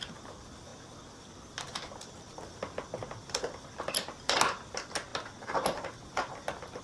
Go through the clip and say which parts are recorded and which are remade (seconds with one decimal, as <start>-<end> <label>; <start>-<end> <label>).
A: 0.0-6.8 recorded